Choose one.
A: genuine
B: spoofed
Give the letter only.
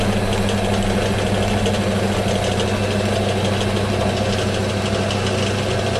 A